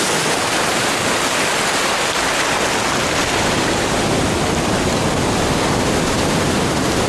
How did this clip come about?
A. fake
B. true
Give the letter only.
B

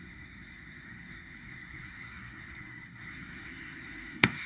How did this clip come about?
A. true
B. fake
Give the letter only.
B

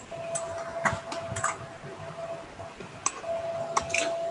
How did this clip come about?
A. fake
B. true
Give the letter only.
B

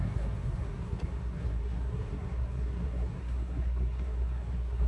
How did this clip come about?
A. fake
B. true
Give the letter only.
A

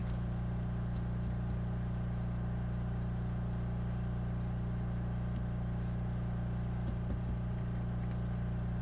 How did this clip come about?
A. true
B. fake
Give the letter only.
A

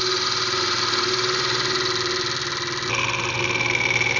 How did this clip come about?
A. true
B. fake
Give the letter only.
A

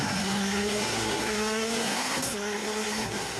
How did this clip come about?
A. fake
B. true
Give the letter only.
A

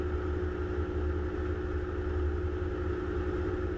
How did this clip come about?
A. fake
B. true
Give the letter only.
B